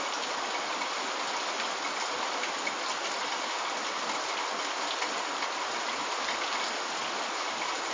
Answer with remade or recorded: recorded